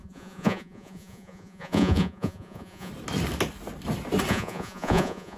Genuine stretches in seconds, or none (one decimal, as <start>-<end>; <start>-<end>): 2.9-4.3